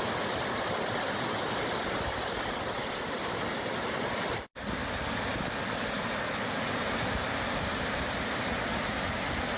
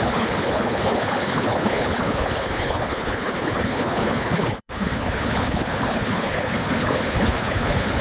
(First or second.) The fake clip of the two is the second